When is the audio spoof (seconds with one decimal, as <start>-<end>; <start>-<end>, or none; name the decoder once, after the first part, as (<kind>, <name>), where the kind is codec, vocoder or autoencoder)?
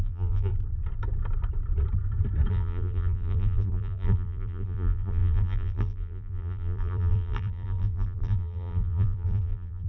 0.0-0.5 (vocoder, BigVGAN v2); 2.5-9.9